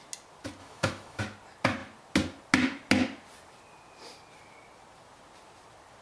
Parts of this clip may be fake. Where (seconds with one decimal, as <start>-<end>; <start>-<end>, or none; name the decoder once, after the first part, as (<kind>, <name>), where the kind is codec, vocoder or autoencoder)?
0.6-1.2 (autoencoder, DAC-VAE)